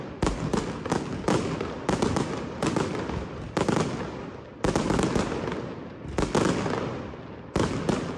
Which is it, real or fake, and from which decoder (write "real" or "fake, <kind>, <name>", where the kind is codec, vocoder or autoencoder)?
real